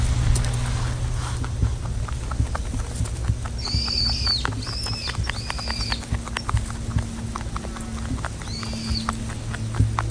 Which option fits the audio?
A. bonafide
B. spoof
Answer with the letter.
A